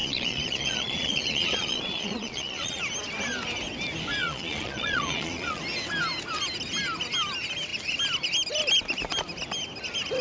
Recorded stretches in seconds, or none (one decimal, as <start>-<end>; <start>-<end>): 2.8-4.2; 5.6-10.2